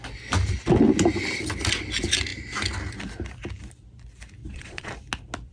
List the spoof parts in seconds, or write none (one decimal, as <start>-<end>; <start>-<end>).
4.4-4.9